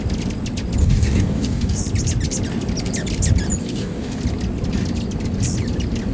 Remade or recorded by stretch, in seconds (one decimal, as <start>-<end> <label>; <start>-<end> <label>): 0.0-0.8 recorded; 0.8-1.8 remade; 1.8-3.6 recorded; 3.6-4.2 remade; 4.2-6.1 recorded